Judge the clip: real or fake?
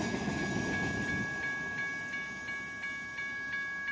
real